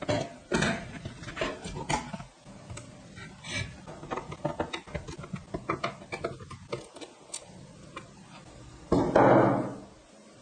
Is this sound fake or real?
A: real